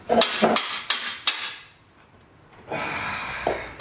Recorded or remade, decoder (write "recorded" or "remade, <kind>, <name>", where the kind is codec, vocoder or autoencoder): recorded